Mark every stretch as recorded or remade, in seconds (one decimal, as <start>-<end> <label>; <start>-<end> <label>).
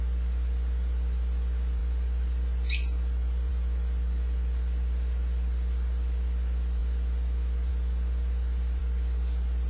0.0-9.7 recorded